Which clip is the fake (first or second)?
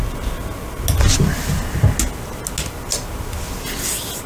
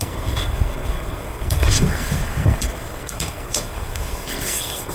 second